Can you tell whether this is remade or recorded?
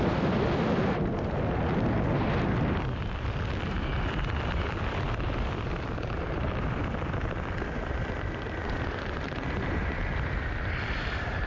recorded